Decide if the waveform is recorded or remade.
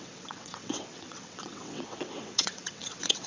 remade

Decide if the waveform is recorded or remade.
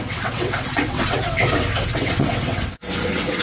remade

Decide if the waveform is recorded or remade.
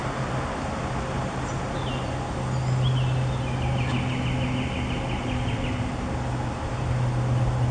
recorded